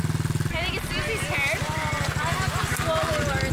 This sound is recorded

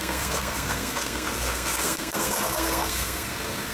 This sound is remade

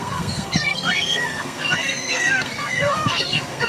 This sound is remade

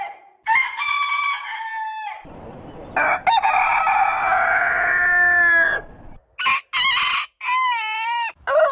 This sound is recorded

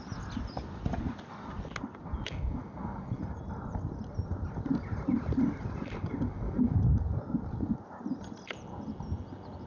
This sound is recorded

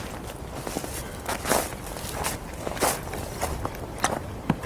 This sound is recorded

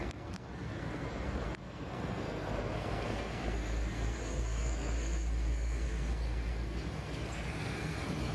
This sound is remade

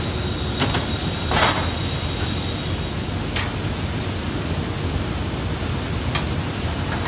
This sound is recorded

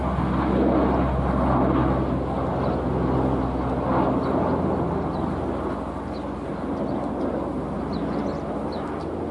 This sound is recorded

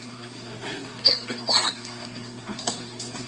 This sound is remade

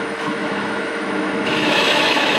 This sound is remade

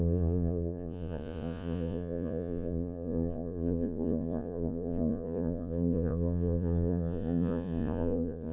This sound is remade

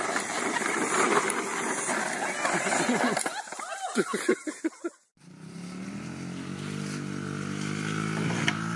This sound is recorded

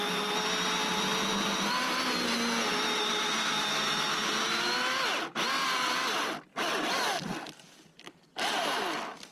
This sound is recorded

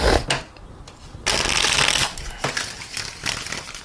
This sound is recorded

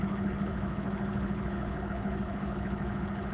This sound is remade